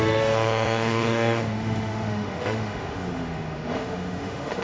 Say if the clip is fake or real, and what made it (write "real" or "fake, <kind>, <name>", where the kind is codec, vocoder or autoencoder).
fake, autoencoder, DAC-VAE